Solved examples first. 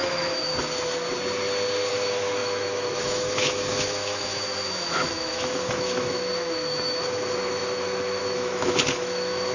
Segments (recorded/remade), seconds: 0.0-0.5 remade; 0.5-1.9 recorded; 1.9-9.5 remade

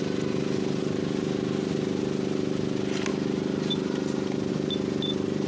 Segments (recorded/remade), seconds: 0.0-5.5 recorded

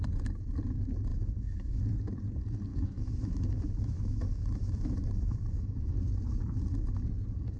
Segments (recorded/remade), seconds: 0.0-1.1 recorded; 1.1-1.8 remade; 1.8-2.7 recorded; 2.7-5.9 remade; 5.9-7.6 recorded